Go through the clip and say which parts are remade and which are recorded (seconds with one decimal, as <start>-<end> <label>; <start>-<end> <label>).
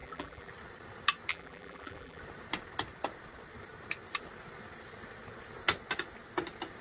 0.0-0.5 remade; 0.5-1.3 recorded; 1.3-2.2 remade; 2.2-6.8 recorded